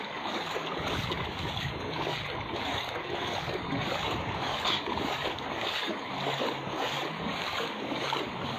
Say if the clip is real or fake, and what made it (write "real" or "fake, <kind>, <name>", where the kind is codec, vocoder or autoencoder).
fake, codec, DAC